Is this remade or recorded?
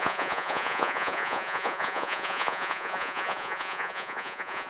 remade